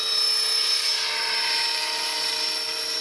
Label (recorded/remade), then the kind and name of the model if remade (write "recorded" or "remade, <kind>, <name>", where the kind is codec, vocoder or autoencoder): recorded